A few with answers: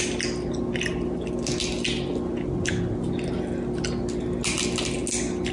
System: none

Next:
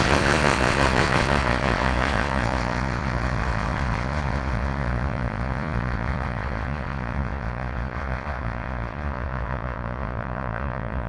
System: vocoder, Vocos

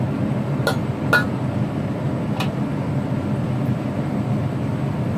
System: none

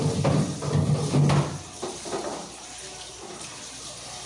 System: none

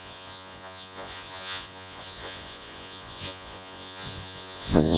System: vocoder, Vocos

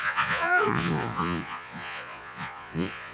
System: vocoder, Vocos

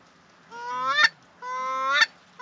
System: none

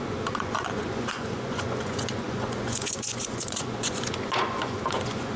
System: vocoder, Vocos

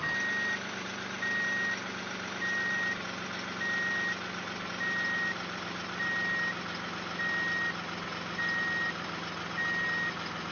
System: none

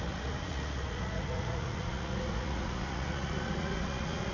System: vocoder, Vocos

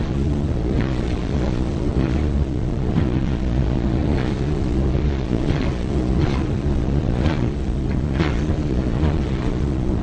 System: vocoder, Vocos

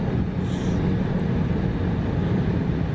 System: none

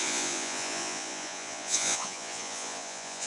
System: vocoder, Vocos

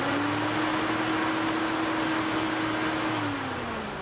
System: none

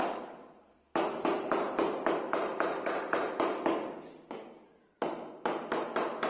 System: none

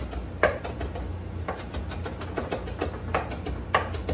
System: none